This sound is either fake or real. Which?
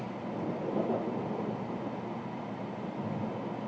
real